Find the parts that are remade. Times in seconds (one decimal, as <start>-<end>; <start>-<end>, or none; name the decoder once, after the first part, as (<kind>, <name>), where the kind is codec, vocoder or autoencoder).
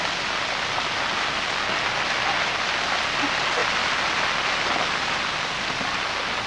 none